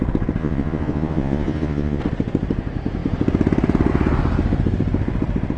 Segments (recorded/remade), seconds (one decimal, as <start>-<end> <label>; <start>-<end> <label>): 0.0-0.4 recorded; 0.4-2.0 remade; 2.0-5.6 recorded